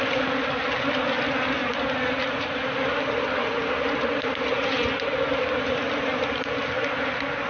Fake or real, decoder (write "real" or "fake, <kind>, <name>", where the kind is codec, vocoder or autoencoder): real